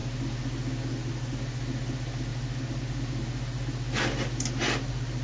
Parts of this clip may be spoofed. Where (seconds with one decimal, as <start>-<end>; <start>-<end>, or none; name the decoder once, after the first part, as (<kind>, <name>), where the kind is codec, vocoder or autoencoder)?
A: none